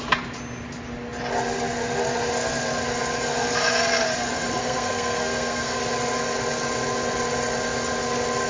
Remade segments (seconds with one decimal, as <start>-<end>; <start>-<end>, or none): 4.6-5.8